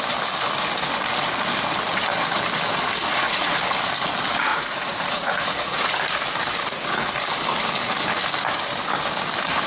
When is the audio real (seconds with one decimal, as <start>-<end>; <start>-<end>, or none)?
0.0-3.1; 3.6-4.5; 6.0-9.7